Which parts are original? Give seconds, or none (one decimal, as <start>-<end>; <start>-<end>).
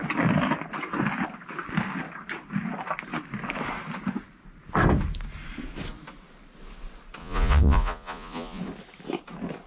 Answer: 0.0-7.2; 8.6-9.7